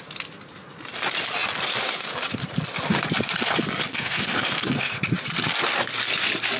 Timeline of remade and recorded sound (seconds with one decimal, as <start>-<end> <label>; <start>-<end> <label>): 0.0-3.9 recorded; 3.9-5.0 remade; 5.0-6.6 recorded